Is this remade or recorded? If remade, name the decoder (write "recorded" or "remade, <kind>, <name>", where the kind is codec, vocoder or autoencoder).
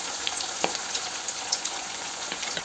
remade, vocoder, Vocos